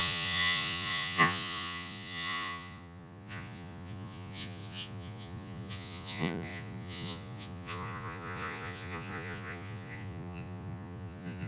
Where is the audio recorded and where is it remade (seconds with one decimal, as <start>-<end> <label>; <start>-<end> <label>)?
0.0-11.5 remade